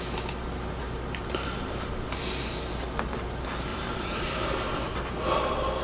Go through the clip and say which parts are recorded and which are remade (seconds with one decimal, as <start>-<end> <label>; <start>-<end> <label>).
0.0-1.2 recorded; 1.2-2.2 remade; 2.2-3.7 recorded; 3.7-5.0 remade; 5.0-5.8 recorded